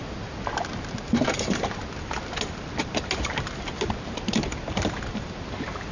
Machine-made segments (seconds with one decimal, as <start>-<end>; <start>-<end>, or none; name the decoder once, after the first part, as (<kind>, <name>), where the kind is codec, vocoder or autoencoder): 0.7-1.8 (vocoder, BigVGAN v2); 2.8-5.9

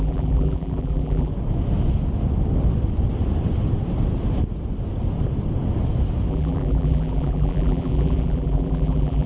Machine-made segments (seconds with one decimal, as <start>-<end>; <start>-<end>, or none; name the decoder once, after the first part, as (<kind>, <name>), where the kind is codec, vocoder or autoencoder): 0.0-1.3 (vocoder, BigVGAN v2); 6.3-9.3